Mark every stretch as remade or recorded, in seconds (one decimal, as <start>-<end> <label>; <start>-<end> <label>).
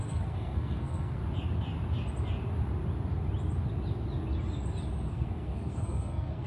0.0-1.2 remade; 1.2-5.1 recorded; 5.1-6.5 remade